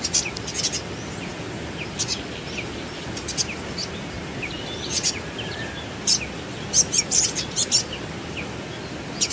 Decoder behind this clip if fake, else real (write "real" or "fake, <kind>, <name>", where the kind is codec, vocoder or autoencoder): real